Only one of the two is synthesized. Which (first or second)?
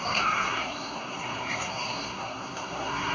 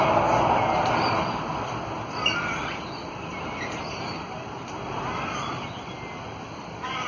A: first